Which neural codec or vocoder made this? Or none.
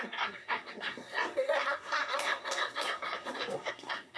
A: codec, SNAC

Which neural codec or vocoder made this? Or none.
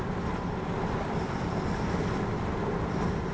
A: none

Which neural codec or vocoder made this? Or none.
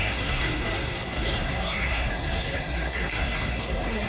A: codec, SNAC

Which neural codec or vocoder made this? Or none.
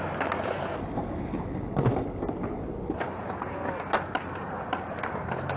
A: none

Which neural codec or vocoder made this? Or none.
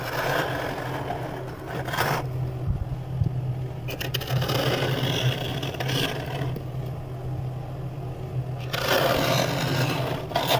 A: none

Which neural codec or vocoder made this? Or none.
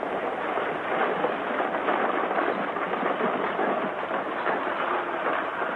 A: none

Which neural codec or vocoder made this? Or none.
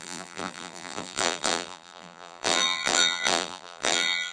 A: vocoder, BigVGAN v2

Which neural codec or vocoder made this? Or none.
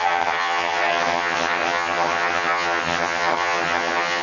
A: vocoder, HiFi-GAN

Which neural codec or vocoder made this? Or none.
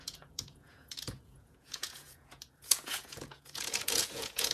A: vocoder, Vocos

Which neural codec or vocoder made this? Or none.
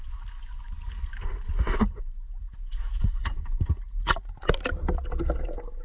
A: none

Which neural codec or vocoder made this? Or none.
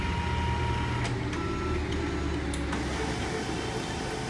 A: none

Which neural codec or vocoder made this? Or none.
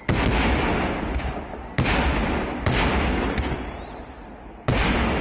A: none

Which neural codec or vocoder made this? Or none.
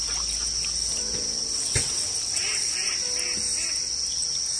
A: none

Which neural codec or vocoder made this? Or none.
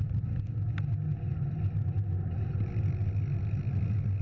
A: none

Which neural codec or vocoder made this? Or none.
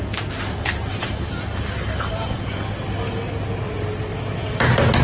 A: none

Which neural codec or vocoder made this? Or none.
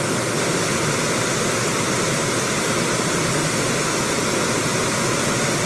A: none